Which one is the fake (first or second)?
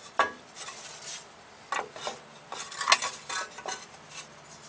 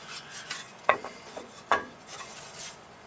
second